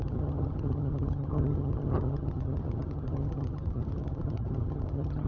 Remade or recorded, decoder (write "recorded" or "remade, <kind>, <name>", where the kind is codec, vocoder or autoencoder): remade, vocoder, HiFi-GAN